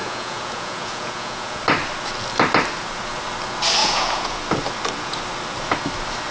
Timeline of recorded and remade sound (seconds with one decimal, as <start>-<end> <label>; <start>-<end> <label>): 0.0-1.6 remade; 1.6-3.8 recorded; 3.8-4.4 remade; 4.4-6.3 recorded